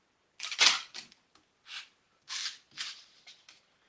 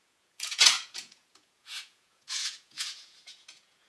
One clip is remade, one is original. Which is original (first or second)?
first